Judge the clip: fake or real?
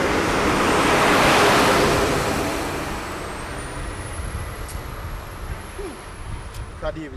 real